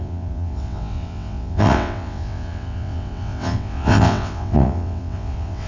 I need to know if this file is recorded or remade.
remade